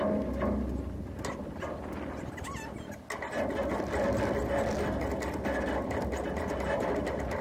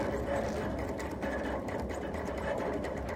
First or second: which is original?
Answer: first